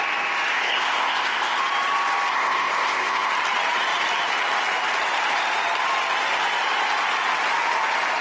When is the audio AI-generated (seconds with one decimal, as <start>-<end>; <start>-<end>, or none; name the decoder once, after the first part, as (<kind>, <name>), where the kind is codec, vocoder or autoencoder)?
0.5-1.6 (codec, ZipCodec); 2.3-3.3